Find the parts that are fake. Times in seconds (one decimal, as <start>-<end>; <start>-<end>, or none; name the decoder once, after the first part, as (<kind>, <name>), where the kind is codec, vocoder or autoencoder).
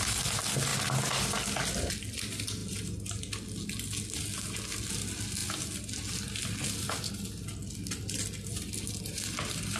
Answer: none